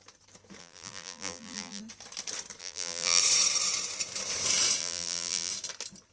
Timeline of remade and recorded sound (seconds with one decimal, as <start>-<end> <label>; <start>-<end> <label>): 0.0-0.6 recorded; 0.6-1.8 remade; 1.8-2.6 recorded; 2.6-3.2 remade; 3.2-4.8 recorded; 4.8-5.5 remade; 5.5-6.1 recorded